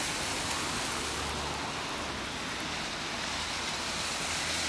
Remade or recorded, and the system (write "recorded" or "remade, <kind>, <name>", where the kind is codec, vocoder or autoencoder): recorded